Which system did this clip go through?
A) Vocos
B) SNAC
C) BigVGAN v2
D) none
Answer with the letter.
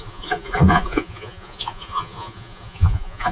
A